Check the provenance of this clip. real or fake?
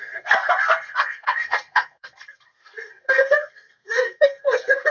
fake